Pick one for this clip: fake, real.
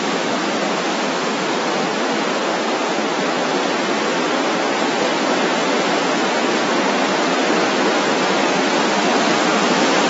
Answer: fake